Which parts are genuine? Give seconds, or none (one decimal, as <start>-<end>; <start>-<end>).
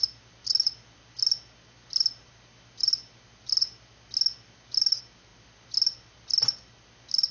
0.0-7.3